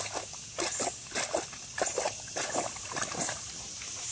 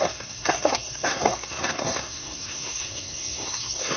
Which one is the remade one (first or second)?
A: second